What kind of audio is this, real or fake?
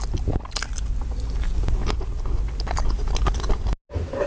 real